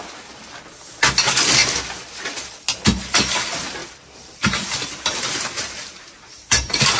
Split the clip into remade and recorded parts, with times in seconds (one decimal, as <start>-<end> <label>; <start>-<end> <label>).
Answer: 0.0-3.8 recorded; 3.8-7.0 remade